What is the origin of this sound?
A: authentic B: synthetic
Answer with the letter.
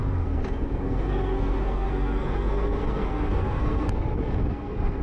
B